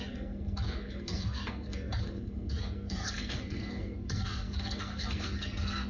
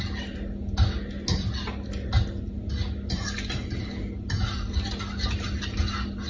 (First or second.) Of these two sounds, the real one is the second